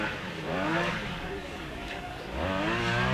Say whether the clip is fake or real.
fake